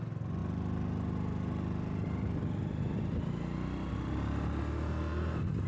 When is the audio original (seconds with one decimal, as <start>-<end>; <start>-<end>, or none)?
0.0-5.7